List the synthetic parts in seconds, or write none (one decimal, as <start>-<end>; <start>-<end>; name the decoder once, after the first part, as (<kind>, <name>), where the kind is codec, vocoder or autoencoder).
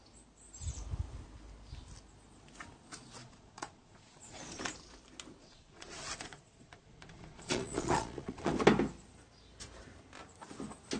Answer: 3.2-4.6 (vocoder, Vocos); 5.4-8.5